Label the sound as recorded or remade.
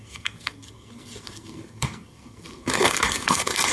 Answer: remade